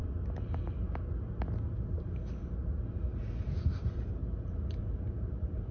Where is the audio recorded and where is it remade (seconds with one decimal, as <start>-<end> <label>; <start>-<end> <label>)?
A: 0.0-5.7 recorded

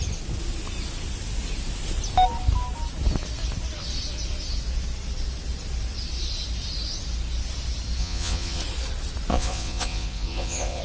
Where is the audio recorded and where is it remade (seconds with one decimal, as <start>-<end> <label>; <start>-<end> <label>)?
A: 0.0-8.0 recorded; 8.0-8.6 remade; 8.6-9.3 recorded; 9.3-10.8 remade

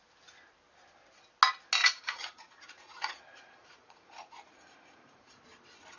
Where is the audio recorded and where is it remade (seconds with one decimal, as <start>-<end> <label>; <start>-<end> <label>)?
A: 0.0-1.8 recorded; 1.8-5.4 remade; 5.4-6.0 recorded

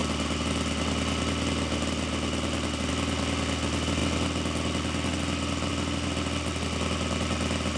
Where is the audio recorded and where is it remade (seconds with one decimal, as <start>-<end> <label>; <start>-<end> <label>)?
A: 0.0-7.8 recorded